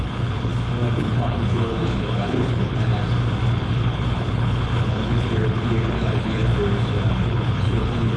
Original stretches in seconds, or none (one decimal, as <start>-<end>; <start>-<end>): 0.5-1.0; 2.9-3.5; 6.5-7.1